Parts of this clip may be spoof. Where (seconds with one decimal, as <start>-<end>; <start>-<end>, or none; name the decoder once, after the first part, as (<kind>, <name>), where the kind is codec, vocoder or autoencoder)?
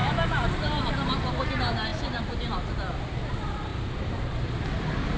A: 0.0-0.9 (vocoder, BigVGAN v2); 3.7-5.2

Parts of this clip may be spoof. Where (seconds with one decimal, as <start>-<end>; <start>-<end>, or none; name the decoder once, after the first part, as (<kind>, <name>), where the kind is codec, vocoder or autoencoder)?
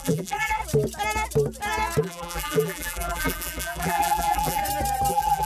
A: 0.0-0.6 (vocoder, BigVGAN v2); 2.0-4.6; 5.1-5.5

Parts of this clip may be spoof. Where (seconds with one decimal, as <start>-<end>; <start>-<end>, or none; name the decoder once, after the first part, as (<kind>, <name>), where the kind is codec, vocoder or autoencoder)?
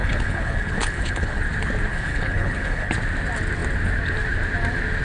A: 0.0-1.4 (codec, HILCodec); 1.9-2.9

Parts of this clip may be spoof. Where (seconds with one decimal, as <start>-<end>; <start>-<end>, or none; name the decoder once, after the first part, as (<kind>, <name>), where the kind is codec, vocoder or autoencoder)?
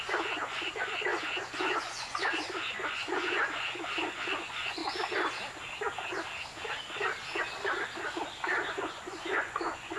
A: 0.0-4.8 (vocoder, Vocos); 8.6-10.0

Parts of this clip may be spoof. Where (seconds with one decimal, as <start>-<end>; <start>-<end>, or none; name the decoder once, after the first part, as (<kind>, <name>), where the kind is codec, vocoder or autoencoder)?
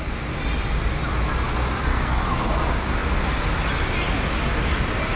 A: 1.9-2.5 (codec, SNAC)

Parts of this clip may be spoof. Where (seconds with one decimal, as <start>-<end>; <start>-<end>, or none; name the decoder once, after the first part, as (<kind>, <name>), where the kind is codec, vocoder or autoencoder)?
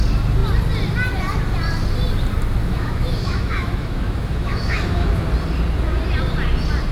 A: 2.6-5.2 (autoencoder, DAC-VAE)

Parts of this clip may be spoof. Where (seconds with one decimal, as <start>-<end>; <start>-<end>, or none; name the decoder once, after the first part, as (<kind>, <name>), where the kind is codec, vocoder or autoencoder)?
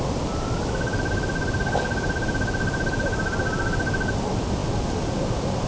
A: none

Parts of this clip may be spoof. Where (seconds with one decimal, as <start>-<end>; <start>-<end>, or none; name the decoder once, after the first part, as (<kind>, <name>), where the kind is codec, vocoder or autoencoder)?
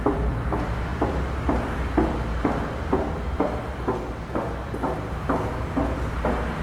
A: none